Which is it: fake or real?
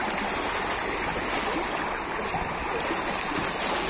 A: real